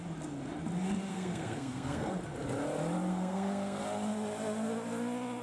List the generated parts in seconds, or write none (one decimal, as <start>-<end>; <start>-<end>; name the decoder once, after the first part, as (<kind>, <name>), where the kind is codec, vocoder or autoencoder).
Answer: 1.1-2.1 (codec, SNAC); 3.1-3.8